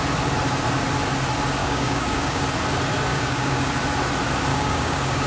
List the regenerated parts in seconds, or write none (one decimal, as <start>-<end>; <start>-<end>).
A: 1.6-2.4; 3.1-3.7; 4.5-5.3